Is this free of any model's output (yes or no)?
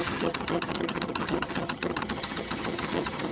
no